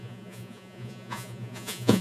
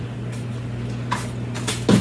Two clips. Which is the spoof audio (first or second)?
first